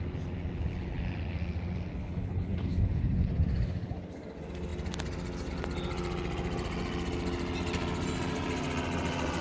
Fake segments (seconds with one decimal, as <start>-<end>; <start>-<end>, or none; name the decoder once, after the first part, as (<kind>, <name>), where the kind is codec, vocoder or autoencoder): 2.0-3.3 (codec, HILCodec)